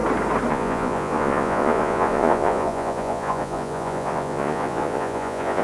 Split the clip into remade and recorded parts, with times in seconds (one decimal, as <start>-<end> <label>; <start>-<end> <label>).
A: 0.0-0.5 recorded; 0.5-5.6 remade